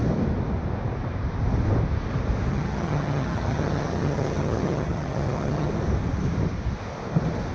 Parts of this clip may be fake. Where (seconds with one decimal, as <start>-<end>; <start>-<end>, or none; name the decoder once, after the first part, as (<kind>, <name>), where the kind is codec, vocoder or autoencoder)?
2.5-5.7 (vocoder, HiFi-GAN)